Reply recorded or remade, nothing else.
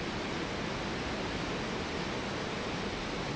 recorded